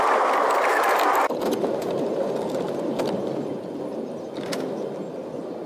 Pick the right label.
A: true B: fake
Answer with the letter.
A